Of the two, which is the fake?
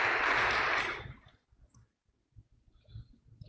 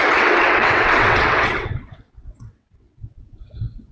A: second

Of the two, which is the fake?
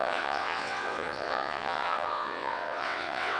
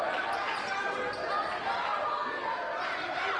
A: first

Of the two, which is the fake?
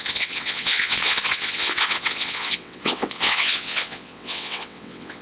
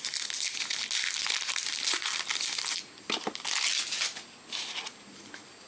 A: first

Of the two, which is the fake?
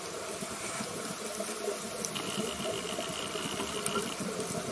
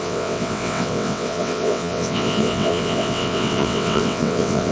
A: second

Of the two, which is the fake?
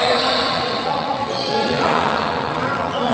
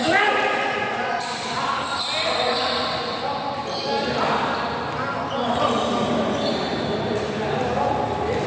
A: first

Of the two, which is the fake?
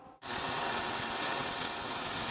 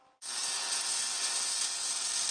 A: first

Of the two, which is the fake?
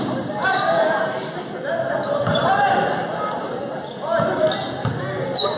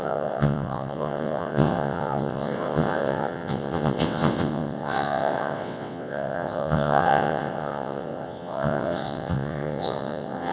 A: second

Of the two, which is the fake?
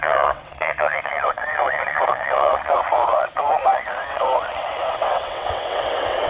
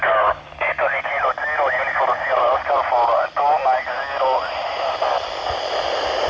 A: first